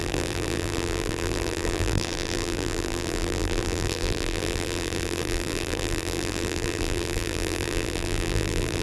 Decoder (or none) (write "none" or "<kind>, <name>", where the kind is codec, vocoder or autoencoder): vocoder, BigVGAN v2